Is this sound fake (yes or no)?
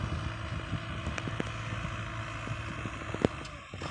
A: no